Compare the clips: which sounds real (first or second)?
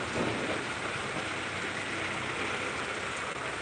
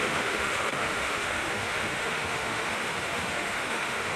first